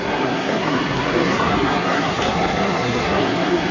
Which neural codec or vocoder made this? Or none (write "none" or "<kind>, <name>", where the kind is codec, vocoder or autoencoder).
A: codec, SNAC